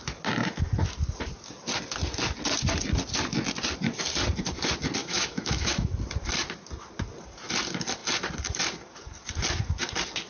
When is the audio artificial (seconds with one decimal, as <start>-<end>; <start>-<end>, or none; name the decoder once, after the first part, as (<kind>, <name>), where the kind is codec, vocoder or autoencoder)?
5.0-5.9 (autoencoder, DAC-VAE)

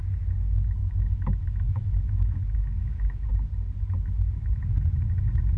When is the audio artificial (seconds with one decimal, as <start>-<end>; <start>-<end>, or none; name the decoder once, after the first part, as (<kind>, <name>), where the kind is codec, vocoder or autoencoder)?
0.8-3.3 (autoencoder, DAC-VAE)

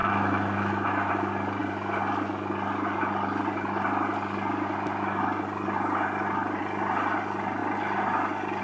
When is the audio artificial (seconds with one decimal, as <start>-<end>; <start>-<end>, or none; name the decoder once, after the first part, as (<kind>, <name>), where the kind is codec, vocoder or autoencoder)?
0.0-1.1 (autoencoder, DAC-VAE)

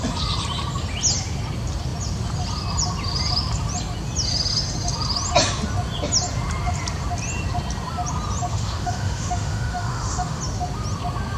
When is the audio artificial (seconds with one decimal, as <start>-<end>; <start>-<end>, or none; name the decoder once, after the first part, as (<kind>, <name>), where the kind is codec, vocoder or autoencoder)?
8.5-10.4 (autoencoder, DAC-VAE)

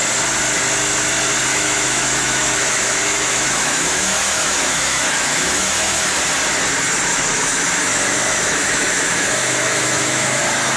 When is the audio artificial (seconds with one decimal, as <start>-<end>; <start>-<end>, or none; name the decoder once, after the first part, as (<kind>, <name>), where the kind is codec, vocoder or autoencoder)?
1.5-6.2 (autoencoder, DAC-VAE); 7.1-10.4